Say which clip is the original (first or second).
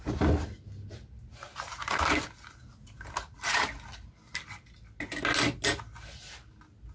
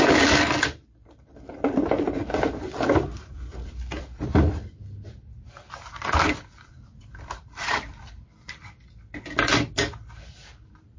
first